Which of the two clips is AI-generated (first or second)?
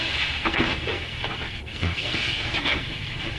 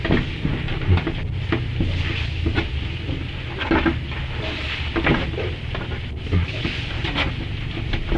first